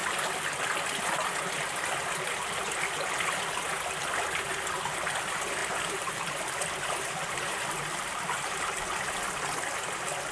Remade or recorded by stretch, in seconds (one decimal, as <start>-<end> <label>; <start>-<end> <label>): 0.0-5.6 recorded; 5.6-9.1 remade; 9.1-10.3 recorded